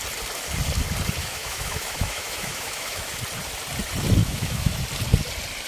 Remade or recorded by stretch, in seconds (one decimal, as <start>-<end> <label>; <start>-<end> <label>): 0.0-1.2 recorded; 1.2-3.2 remade; 3.2-4.2 recorded; 4.2-4.8 remade; 4.8-5.7 recorded